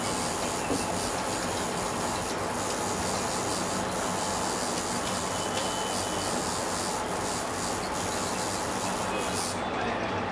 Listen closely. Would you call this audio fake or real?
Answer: real